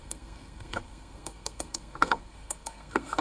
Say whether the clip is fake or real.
fake